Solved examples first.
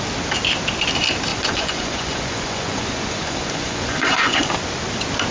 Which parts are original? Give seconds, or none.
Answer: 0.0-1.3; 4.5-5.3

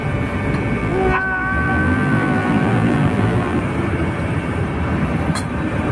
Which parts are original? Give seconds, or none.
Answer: 0.0-0.8; 3.6-5.9

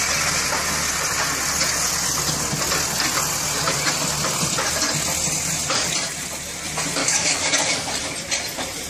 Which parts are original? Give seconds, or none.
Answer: 0.0-7.0; 7.9-8.9

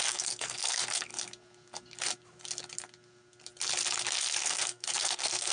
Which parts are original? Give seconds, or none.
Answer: 1.1-4.4

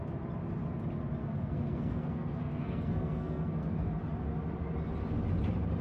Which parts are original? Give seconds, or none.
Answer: 0.0-1.2; 3.9-5.8